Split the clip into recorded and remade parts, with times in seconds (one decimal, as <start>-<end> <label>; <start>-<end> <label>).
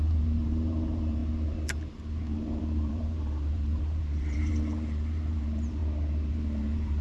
0.0-5.8 remade; 5.8-6.3 recorded; 6.3-7.0 remade